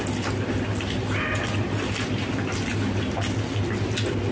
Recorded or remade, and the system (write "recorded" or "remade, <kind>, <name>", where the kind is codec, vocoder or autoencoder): recorded